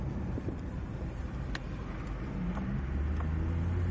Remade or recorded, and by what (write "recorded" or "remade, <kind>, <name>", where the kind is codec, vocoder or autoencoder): recorded